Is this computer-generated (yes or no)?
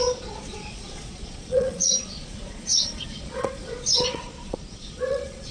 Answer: yes